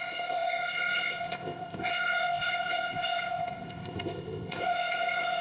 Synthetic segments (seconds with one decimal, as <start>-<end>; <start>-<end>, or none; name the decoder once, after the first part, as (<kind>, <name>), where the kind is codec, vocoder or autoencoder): 0.0-5.4 (codec, ZipCodec)